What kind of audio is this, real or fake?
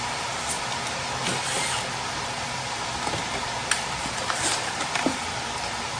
real